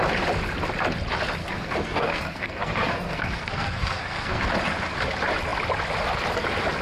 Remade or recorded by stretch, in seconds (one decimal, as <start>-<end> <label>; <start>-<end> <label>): 0.0-1.4 recorded; 1.4-4.5 remade; 4.5-6.8 recorded